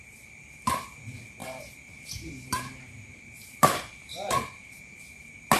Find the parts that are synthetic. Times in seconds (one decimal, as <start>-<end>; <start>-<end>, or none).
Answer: 0.4-0.9; 1.4-4.8